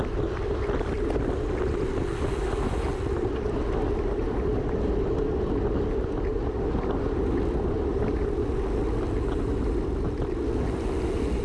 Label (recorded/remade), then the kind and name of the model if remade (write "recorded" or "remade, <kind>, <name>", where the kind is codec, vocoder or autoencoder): recorded